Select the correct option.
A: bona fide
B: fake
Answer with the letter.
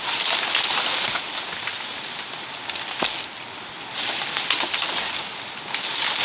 A